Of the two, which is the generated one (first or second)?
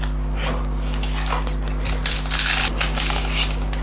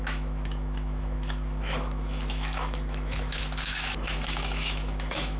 second